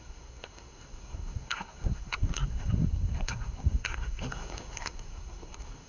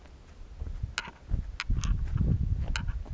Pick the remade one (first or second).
first